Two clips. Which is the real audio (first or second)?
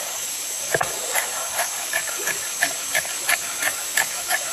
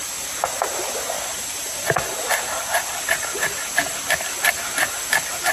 second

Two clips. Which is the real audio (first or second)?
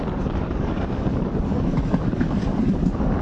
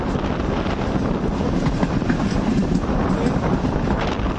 second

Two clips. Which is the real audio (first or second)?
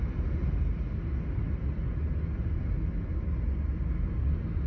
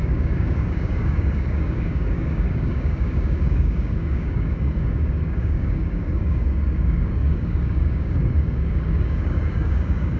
first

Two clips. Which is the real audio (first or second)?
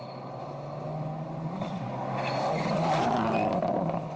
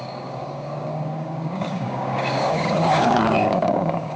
first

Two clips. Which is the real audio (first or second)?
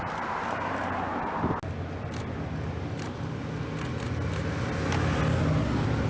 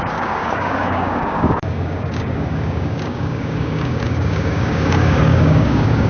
first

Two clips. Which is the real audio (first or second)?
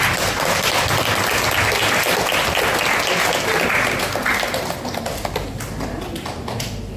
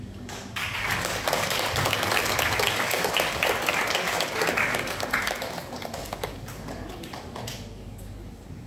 first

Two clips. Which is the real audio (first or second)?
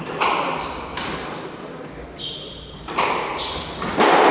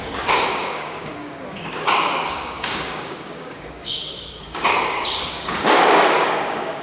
first